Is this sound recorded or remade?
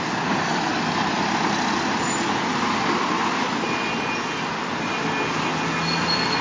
recorded